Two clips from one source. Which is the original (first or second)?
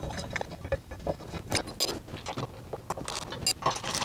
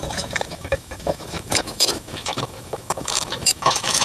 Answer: first